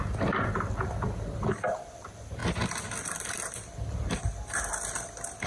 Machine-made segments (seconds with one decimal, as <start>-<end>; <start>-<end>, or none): none

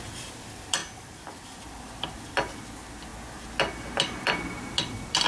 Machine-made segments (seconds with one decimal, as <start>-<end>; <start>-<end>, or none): none

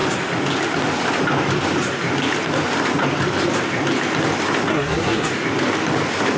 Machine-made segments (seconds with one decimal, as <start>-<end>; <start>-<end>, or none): 4.7-5.3

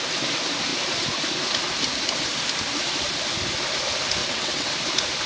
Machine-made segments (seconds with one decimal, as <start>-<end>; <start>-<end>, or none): 4.2-4.7

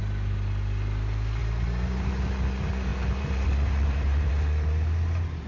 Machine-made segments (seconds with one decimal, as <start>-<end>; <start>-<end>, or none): 2.9-4.3